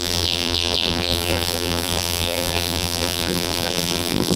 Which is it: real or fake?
fake